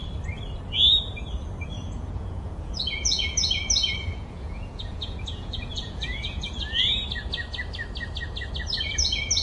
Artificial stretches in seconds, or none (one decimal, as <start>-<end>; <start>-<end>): 1.7-3.2; 4.0-6.5